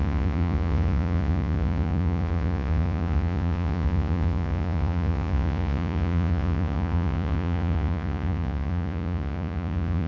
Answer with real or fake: fake